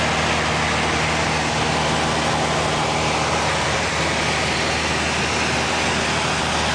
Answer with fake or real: real